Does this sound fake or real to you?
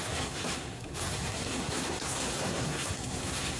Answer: fake